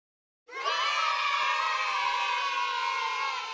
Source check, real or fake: real